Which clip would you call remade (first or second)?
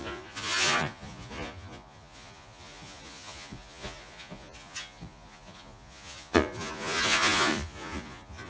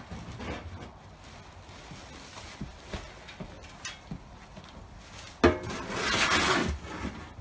first